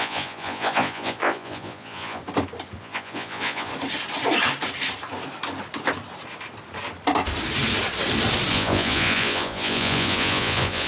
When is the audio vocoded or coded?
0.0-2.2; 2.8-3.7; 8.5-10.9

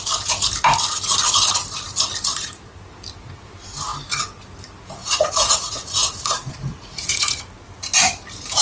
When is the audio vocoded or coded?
2.3-2.8; 5.0-7.4

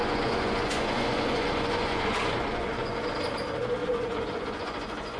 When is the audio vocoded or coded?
0.0-3.1; 3.8-5.2

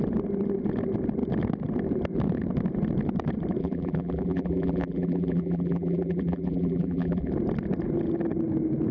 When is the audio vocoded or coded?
3.6-7.3

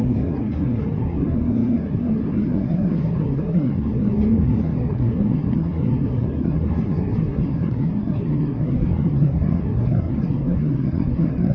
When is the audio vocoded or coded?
0.0-11.5

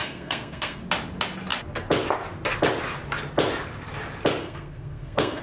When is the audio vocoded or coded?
0.0-0.8; 4.4-5.4

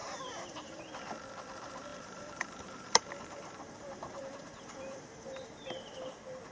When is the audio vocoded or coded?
0.0-0.8; 1.9-5.8